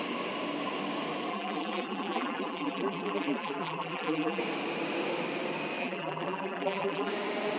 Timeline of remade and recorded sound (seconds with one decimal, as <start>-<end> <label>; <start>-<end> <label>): 0.0-1.3 recorded; 1.3-4.4 remade; 4.4-5.8 recorded; 5.8-7.1 remade; 7.1-7.6 recorded